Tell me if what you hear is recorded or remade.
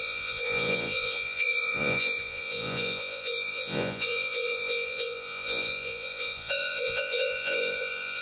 remade